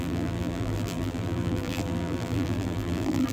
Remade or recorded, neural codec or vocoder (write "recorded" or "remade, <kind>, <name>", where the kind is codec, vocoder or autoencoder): remade, vocoder, BigVGAN v2